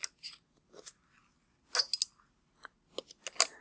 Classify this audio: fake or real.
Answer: real